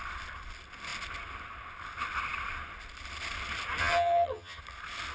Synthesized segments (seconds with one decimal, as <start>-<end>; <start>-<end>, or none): 3.8-4.6